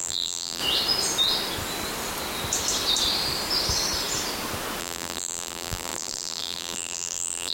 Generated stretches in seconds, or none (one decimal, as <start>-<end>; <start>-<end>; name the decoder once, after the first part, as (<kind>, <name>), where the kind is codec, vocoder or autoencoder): 0.0-0.6 (vocoder, BigVGAN v2); 4.8-7.5